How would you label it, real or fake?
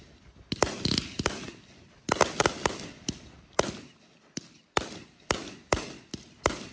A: real